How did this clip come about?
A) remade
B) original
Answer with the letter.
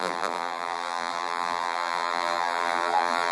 A